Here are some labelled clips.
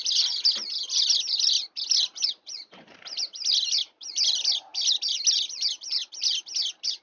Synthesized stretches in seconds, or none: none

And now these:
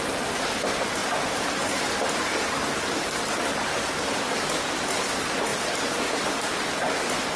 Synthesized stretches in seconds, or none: none